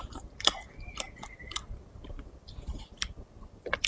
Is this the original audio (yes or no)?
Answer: yes